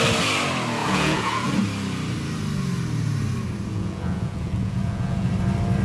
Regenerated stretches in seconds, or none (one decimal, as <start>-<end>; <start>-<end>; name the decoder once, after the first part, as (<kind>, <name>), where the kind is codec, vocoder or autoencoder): 0.8-1.5 (vocoder, Vocos); 3.7-5.3